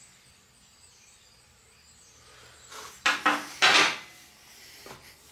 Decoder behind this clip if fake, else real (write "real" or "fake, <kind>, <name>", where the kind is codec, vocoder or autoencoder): real